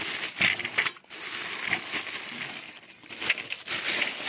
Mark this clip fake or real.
real